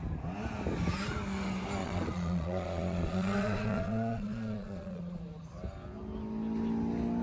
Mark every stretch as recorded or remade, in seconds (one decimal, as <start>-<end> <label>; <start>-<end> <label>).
0.0-1.8 recorded; 1.8-5.2 remade; 5.2-7.2 recorded

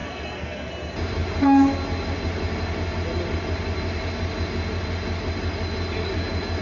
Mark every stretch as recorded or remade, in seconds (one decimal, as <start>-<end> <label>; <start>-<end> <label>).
0.0-0.7 remade; 0.7-6.6 recorded

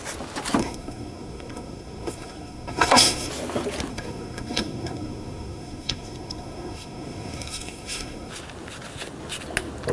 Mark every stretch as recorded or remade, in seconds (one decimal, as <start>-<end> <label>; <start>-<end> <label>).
0.0-0.6 recorded; 0.6-3.3 remade; 3.3-3.9 recorded; 3.9-8.3 remade; 8.3-9.9 recorded

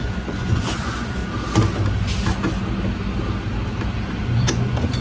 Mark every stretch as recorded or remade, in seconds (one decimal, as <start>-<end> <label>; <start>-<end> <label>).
0.0-1.2 remade; 1.2-4.2 recorded; 4.2-5.0 remade